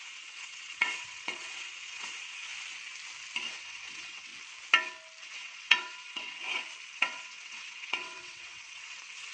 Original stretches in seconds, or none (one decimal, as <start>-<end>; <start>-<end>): 2.5-3.5; 4.3-5.2; 6.4-6.9